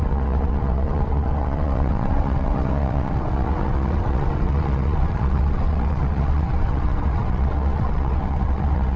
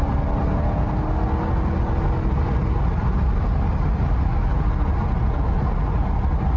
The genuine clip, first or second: second